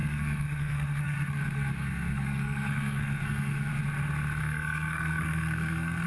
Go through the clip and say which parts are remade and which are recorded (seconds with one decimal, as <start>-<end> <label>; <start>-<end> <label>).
0.0-3.7 remade; 3.7-4.4 recorded; 4.4-6.1 remade